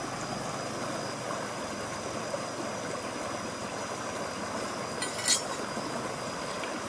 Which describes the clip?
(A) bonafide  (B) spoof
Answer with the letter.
A